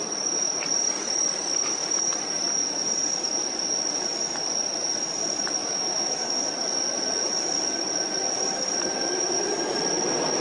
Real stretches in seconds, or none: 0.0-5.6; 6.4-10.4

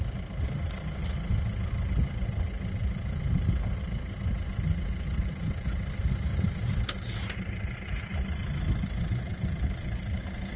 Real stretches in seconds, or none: 0.0-6.3; 6.8-9.3; 10.2-10.6

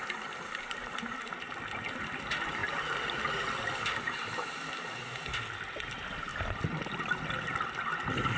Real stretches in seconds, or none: 1.3-2.6; 4.3-5.1; 5.7-6.3; 7.0-8.4

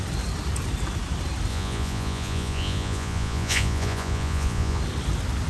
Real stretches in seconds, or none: 0.0-1.5; 4.8-5.5